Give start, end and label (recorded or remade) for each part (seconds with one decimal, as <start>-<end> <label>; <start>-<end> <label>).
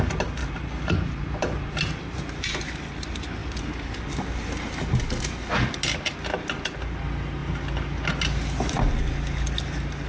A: 0.0-0.4 recorded; 0.4-2.9 remade; 2.9-10.1 recorded